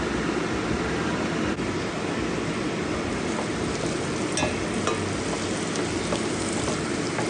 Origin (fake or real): real